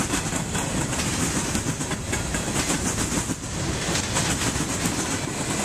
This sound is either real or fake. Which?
real